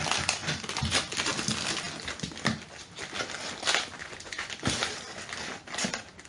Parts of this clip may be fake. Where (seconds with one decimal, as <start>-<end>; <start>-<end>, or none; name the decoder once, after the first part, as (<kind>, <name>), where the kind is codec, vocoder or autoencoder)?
4.0-4.5 (vocoder, Vocos)